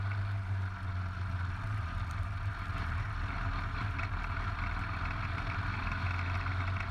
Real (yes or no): yes